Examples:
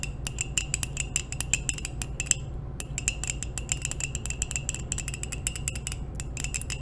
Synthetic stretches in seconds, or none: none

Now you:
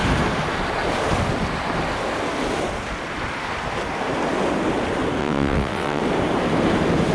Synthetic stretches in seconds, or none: 5.2-6.0 (vocoder, WaveNeXt)

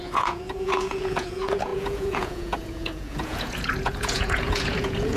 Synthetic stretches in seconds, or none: 0.0-5.2 (vocoder, Vocos)

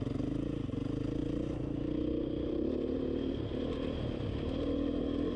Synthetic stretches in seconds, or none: none

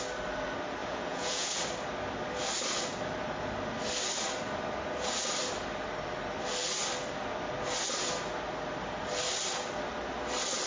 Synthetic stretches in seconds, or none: 0.8-1.6 (vocoder, Vocos)

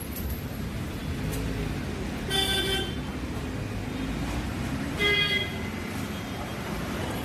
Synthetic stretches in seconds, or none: 0.0-1.0 (vocoder, BigVGAN v2); 4.5-5.0; 5.8-7.2